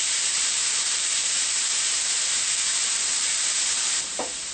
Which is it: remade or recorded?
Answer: remade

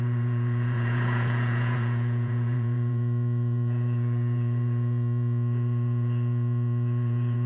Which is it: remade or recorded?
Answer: remade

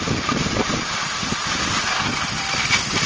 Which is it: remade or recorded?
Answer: remade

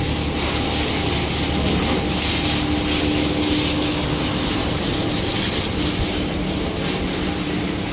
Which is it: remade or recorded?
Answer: recorded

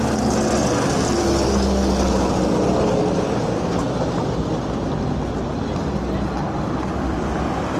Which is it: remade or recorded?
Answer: recorded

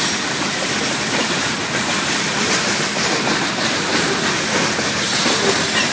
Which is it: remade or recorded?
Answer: recorded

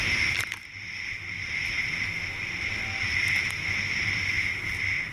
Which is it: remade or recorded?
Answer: recorded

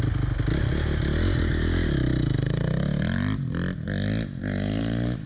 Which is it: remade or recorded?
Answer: recorded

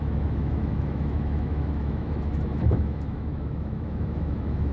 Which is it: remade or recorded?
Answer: remade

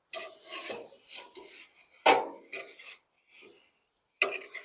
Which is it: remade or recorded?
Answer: recorded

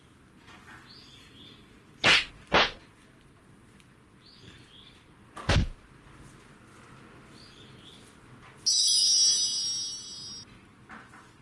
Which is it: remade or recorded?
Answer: recorded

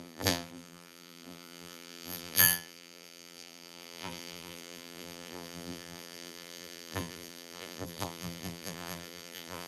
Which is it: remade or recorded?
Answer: remade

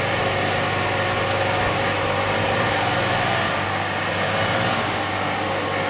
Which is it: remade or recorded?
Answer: recorded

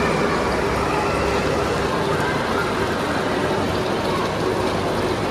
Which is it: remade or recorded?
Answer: recorded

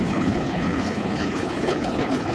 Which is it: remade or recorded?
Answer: remade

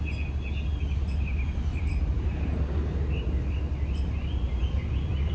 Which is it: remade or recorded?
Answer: recorded